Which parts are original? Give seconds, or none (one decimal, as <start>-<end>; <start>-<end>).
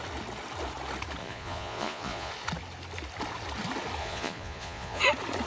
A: 0.0-1.2; 2.3-4.0; 5.0-5.5